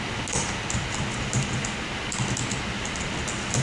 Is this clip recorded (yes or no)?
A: yes